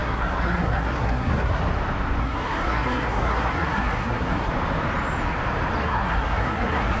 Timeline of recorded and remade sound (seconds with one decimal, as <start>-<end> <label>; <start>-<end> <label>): 0.0-1.6 remade; 1.6-2.2 recorded; 2.2-4.5 remade; 4.5-5.8 recorded; 5.8-7.0 remade